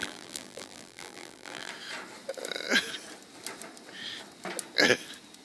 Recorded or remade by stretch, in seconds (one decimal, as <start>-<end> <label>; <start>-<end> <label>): 0.0-1.7 remade; 1.7-5.4 recorded